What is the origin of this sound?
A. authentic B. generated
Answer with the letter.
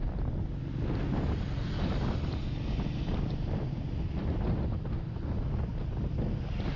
A